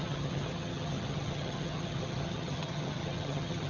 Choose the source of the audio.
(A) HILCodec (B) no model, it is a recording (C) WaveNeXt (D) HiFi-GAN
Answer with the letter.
D